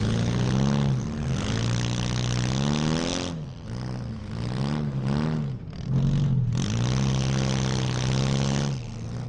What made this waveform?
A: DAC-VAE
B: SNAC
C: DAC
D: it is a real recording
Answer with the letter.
D